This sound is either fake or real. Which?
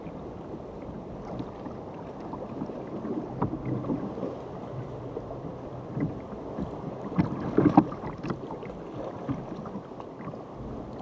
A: real